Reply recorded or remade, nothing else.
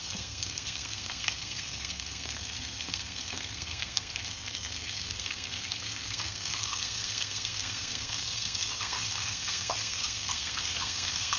remade